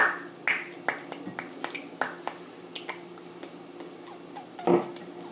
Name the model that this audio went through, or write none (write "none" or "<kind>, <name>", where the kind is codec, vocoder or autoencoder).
none